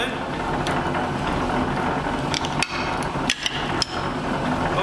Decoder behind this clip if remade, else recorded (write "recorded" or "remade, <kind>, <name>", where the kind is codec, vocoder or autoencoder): recorded